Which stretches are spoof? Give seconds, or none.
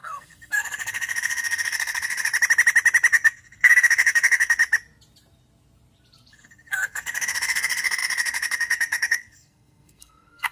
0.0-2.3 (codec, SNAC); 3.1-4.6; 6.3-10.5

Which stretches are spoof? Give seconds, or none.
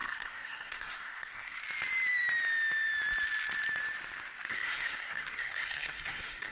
0.0-1.6 (codec, SNAC); 4.5-6.5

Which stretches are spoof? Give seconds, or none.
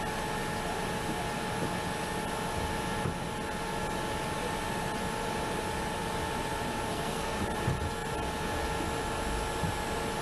6.9-7.4 (codec, SNAC)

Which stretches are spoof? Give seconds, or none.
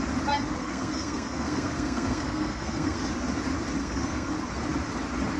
0.6-3.0 (codec, SNAC); 3.8-4.3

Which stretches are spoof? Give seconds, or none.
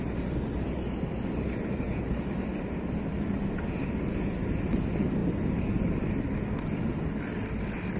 none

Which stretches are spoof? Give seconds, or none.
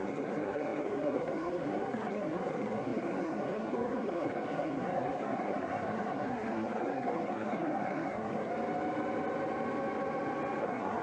0.0-8.5 (codec, SNAC); 10.6-11.0